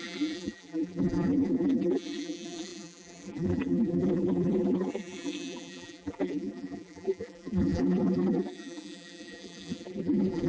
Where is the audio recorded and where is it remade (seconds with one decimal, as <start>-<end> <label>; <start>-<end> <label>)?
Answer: 0.0-10.5 remade